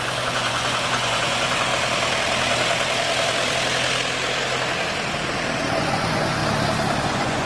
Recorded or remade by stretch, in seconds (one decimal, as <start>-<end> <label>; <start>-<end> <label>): 0.0-1.7 remade; 1.7-5.7 recorded; 5.7-6.4 remade; 6.4-7.0 recorded; 7.0-7.5 remade